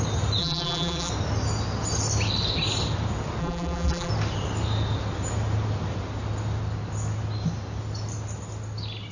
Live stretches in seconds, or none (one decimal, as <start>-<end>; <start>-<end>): 0.0-0.4; 1.1-3.4; 4.1-9.1